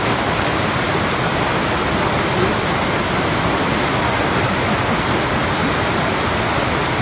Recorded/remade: recorded